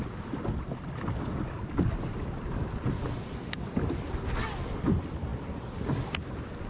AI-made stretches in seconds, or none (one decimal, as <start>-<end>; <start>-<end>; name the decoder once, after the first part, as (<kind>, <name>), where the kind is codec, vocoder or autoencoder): none